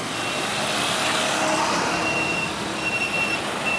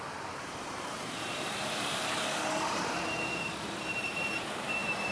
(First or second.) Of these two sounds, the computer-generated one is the second